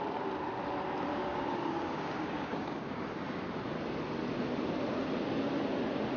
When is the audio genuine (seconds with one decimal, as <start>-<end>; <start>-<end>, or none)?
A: 0.0-1.1; 3.0-6.2